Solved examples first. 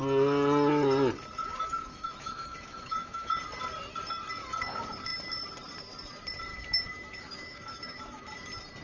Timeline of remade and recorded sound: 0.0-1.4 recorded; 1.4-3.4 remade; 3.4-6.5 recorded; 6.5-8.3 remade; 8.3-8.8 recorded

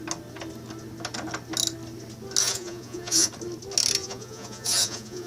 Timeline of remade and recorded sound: 0.0-2.4 recorded; 2.4-3.3 remade; 3.3-4.0 recorded; 4.0-5.3 remade

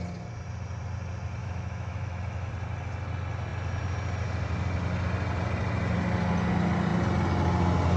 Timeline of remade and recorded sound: 0.0-1.4 recorded; 1.4-2.5 remade; 2.5-8.0 recorded

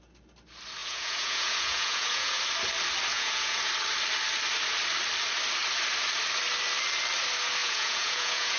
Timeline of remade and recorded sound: 0.0-0.8 recorded; 0.8-2.4 remade; 2.4-3.1 recorded; 3.1-3.7 remade; 3.7-7.6 recorded; 7.6-8.6 remade